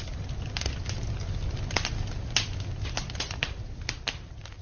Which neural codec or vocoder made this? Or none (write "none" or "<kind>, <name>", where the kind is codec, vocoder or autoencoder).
none